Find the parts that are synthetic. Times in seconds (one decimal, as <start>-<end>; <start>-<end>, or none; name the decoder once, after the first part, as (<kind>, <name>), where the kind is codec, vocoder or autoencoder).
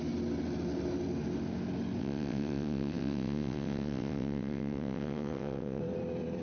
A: 2.0-5.8 (vocoder, WaveNeXt)